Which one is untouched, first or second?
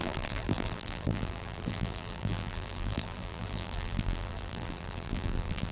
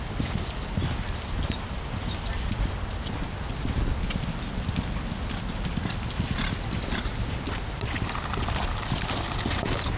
second